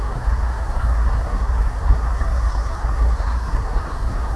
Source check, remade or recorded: remade